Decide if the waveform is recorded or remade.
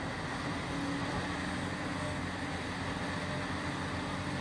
recorded